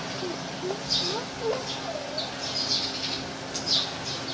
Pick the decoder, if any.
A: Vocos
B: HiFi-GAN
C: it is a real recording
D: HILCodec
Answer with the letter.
C